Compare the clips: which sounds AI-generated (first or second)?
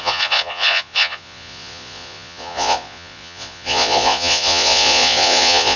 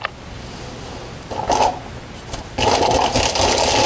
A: first